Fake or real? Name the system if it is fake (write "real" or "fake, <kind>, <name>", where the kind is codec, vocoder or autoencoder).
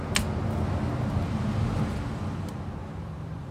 real